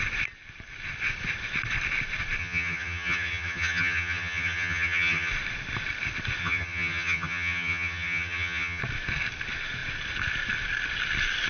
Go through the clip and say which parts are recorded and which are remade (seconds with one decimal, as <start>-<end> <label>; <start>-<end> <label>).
0.0-2.4 recorded; 2.4-5.3 remade; 5.3-6.4 recorded; 6.4-8.8 remade; 8.8-11.5 recorded